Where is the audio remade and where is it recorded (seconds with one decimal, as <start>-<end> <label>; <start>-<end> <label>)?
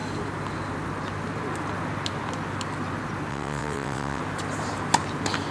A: 0.0-3.3 recorded; 3.3-4.2 remade; 4.2-5.5 recorded